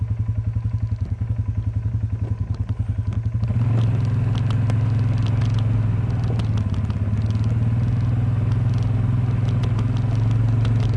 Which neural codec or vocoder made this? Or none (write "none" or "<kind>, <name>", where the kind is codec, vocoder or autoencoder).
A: none